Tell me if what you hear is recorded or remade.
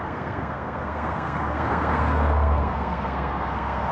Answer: remade